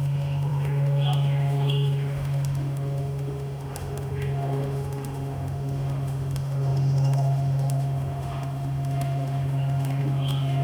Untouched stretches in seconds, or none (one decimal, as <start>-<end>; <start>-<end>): none